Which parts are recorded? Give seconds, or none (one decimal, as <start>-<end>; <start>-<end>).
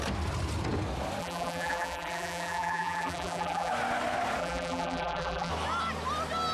0.0-1.2; 3.7-4.4; 5.5-6.5